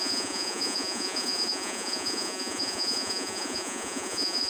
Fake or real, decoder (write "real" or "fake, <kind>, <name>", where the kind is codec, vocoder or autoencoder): fake, vocoder, Vocos